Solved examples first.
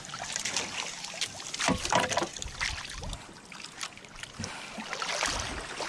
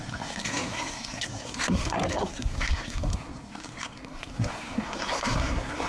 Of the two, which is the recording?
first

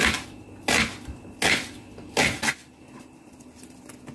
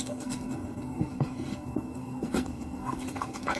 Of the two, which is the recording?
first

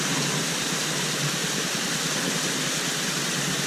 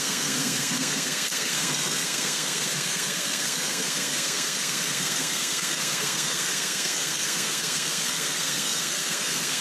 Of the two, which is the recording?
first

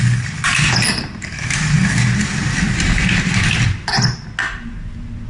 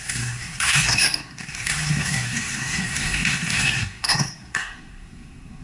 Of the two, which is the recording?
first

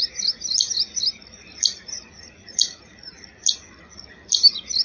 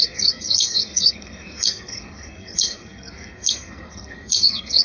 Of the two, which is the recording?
first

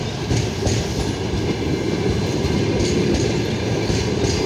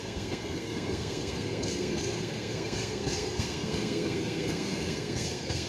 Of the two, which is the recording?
first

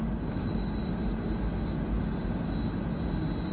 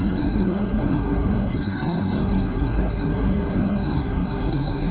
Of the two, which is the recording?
first